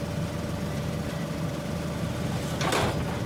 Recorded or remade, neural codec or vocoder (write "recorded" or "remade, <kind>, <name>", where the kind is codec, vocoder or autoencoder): recorded